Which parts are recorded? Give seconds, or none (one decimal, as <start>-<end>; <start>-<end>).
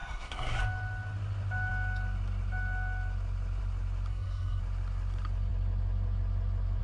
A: 0.6-4.1; 4.6-6.8